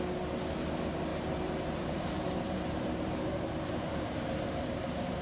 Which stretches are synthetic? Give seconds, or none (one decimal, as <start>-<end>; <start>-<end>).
1.1-4.2